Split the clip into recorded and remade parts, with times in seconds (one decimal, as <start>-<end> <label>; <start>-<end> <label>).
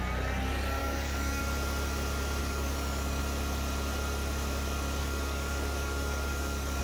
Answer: 0.0-0.8 recorded; 0.8-1.4 remade; 1.4-2.4 recorded; 2.4-3.2 remade; 3.2-5.0 recorded; 5.0-6.8 remade